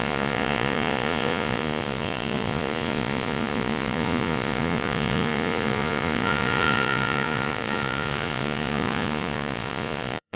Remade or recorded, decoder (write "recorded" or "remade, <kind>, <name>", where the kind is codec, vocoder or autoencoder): remade, vocoder, Vocos